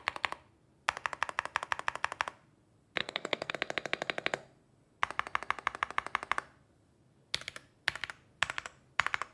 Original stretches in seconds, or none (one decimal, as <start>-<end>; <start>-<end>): 0.0-3.0; 3.5-9.3